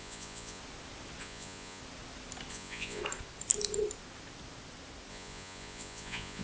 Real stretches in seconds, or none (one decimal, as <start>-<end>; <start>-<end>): 0.6-1.2; 1.8-2.5; 3.0-5.1